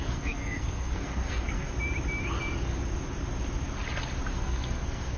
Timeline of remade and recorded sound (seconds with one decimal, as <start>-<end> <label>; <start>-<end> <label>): 0.0-1.7 remade; 1.7-4.3 recorded; 4.3-5.2 remade